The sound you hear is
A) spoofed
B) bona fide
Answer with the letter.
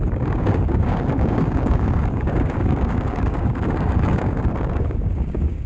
A